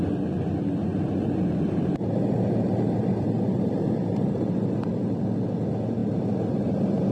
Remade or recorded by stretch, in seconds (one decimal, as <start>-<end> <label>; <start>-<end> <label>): 0.0-0.9 recorded; 0.9-5.2 remade; 5.2-6.0 recorded; 6.0-7.1 remade

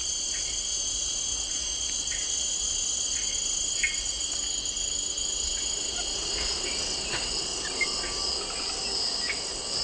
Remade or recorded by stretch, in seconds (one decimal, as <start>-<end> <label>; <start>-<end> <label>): 0.0-9.8 recorded